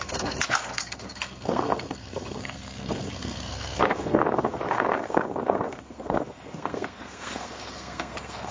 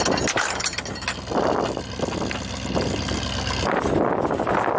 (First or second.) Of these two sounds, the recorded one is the second